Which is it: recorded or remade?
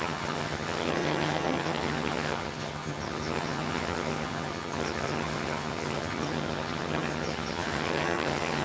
remade